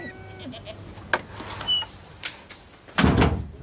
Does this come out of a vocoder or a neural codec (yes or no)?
no